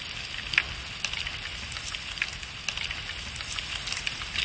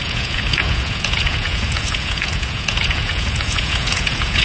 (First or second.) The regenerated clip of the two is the second